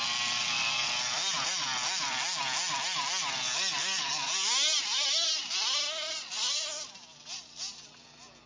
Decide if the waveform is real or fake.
real